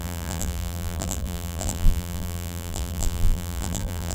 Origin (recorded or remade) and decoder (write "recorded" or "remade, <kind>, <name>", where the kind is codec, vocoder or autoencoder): remade, vocoder, BigVGAN v2